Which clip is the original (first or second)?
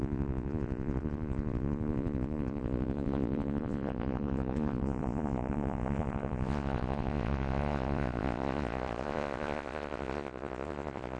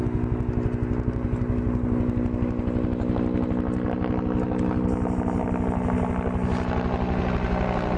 second